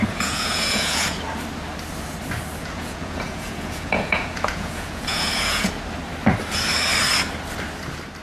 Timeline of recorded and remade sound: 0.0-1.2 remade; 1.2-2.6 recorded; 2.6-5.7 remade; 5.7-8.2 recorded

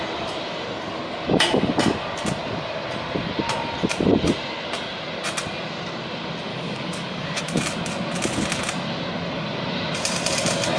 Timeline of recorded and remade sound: 0.0-6.5 recorded; 6.5-7.4 remade; 7.4-10.8 recorded

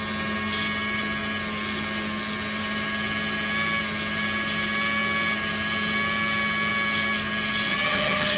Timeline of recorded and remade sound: 0.0-7.7 recorded; 7.7-8.4 remade

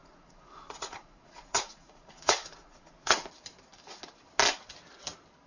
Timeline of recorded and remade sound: 0.0-3.3 remade; 3.3-5.5 recorded

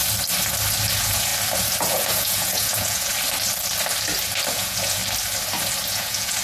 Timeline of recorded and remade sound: 0.0-0.9 recorded; 0.9-1.3 remade; 1.3-1.8 recorded; 1.8-3.1 remade; 3.1-4.5 recorded; 4.5-5.0 remade; 5.0-5.9 recorded; 5.9-6.4 remade

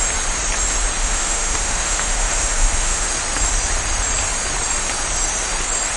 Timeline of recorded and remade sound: 0.0-1.0 recorded; 1.0-3.1 remade; 3.1-6.0 recorded